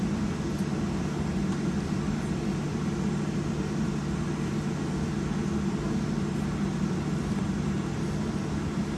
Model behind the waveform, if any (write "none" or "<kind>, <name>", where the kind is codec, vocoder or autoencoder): none